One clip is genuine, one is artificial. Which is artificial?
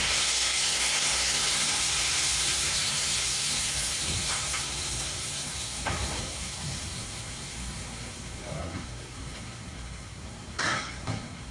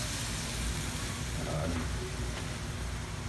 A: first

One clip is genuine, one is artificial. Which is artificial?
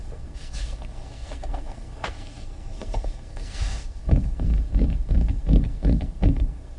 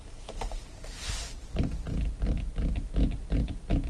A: first